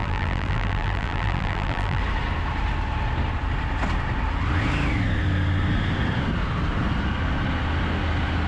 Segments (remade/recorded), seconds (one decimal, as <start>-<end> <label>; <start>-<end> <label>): 0.0-2.0 remade; 2.0-8.5 recorded